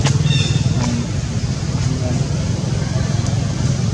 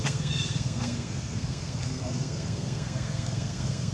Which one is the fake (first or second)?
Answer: second